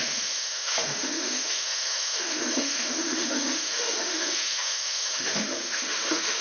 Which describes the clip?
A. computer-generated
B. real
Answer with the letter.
A